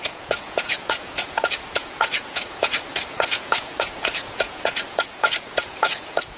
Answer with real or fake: fake